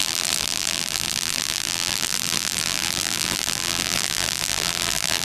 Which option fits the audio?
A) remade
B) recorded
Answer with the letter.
A